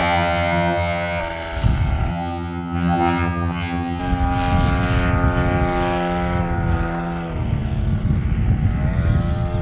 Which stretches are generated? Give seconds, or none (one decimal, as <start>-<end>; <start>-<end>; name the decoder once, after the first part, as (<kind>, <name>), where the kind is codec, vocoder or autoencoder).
0.0-1.2 (vocoder, HiFi-GAN); 2.1-4.0